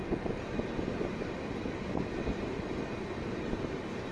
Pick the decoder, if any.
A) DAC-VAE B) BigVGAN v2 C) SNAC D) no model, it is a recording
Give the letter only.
D